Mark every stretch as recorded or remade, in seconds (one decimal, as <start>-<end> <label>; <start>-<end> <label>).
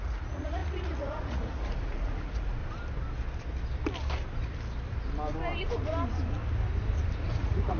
0.0-2.6 remade; 2.6-7.3 recorded; 7.3-7.8 remade